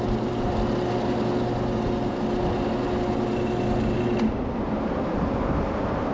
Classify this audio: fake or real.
real